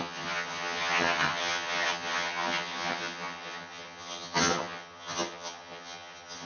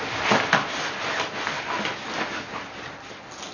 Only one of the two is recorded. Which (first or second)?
second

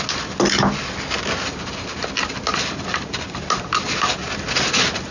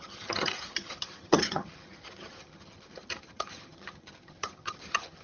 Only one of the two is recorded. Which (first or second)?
first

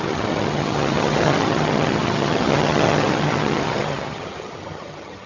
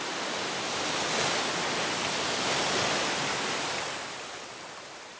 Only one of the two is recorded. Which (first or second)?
second